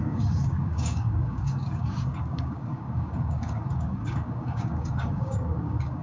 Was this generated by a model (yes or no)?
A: yes